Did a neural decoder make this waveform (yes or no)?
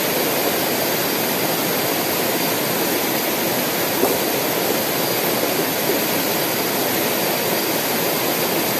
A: no